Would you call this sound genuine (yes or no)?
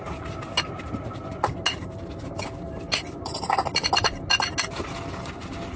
yes